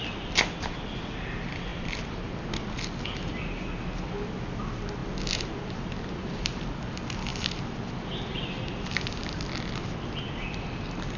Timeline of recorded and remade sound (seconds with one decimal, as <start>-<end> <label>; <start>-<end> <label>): 0.0-1.7 recorded; 1.7-2.3 remade; 2.3-11.2 recorded